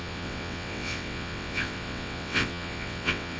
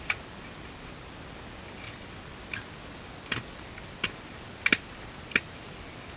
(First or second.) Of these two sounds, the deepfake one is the first